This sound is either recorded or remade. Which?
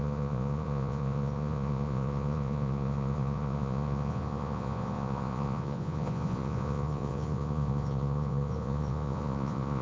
remade